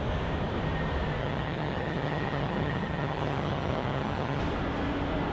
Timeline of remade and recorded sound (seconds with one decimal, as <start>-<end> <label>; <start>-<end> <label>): 0.0-1.2 recorded; 1.2-4.4 remade; 4.4-5.3 recorded